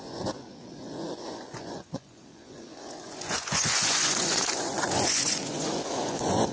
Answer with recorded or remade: remade